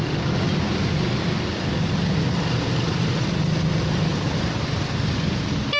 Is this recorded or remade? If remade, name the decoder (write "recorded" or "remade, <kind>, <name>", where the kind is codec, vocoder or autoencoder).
recorded